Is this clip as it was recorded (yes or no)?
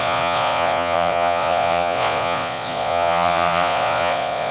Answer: no